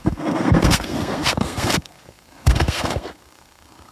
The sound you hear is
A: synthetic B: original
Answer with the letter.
A